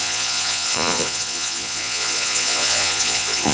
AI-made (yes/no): yes